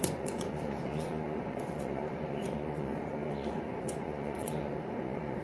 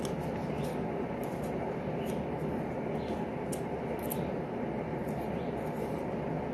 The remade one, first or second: first